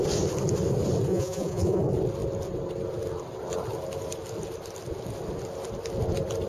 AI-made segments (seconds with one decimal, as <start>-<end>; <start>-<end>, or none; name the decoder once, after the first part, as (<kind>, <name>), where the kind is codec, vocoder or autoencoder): 1.1-1.8 (vocoder, Vocos)